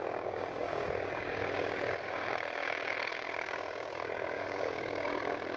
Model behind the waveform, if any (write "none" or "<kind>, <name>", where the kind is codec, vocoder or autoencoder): codec, DAC